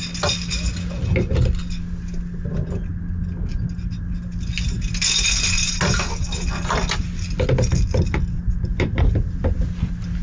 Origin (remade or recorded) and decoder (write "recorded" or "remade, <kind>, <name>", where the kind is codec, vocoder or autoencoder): recorded